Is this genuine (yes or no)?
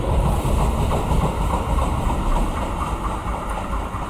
yes